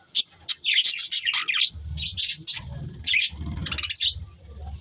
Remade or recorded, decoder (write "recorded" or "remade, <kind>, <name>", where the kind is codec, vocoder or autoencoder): remade, vocoder, BigVGAN v2